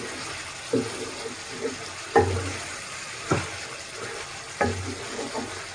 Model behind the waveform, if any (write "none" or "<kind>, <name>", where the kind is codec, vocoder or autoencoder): none